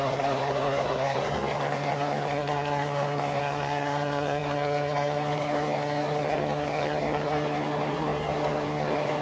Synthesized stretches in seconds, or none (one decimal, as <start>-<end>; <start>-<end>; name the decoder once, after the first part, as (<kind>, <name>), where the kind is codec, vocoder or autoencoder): 0.0-9.2 (codec, SNAC)

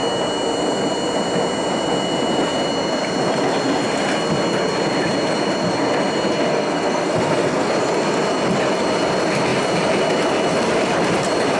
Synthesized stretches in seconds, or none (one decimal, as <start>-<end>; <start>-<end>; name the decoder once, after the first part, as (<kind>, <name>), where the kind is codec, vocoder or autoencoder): 6.5-7.7 (codec, SNAC)

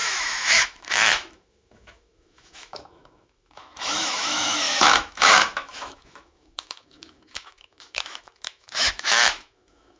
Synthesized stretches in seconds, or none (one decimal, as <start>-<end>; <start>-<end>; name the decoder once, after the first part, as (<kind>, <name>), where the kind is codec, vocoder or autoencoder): 0.0-10.0 (autoencoder, DAC-VAE)

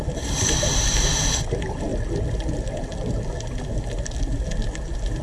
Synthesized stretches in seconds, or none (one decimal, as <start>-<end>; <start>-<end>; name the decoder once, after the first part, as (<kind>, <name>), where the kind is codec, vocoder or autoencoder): none

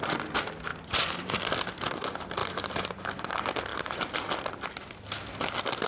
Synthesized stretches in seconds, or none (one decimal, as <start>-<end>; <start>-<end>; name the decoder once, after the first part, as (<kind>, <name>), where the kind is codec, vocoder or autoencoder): 0.7-1.4 (vocoder, BigVGAN v2); 2.4-3.0

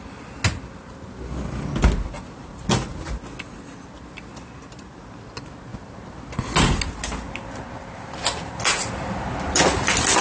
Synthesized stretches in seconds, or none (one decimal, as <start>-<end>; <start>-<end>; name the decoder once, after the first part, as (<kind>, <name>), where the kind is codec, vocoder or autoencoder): none